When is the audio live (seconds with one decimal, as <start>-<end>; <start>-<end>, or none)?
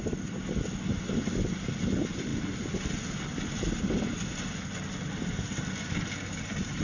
0.0-6.8